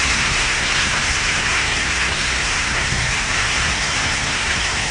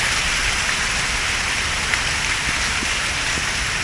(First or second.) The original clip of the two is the second